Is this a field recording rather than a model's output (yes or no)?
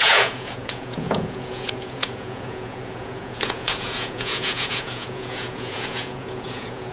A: no